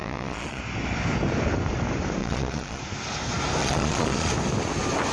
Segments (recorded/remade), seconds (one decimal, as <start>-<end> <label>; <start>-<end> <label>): 0.0-0.6 remade; 0.6-2.2 recorded; 2.2-2.8 remade; 2.8-3.6 recorded; 3.6-4.3 remade; 4.3-5.1 recorded